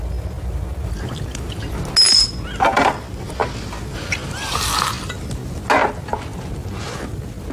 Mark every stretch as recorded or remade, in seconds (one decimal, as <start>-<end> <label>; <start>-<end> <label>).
0.0-7.5 recorded